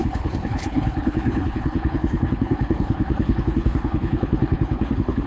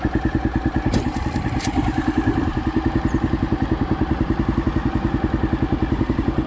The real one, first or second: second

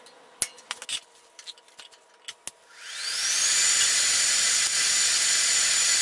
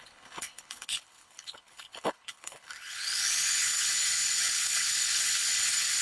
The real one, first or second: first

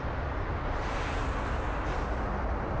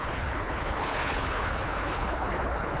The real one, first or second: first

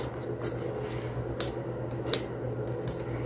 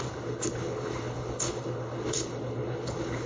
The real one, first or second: first